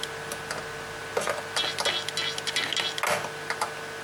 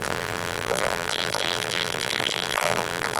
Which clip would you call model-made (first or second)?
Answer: second